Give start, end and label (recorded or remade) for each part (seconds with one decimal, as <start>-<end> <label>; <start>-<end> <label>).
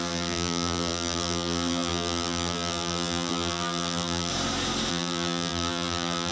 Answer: 0.0-4.3 remade; 4.3-4.9 recorded; 4.9-6.3 remade